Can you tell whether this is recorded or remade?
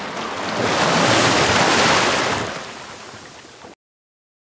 recorded